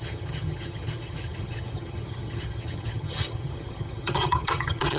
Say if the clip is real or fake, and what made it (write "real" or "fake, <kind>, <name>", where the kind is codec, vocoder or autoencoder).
fake, vocoder, HiFi-GAN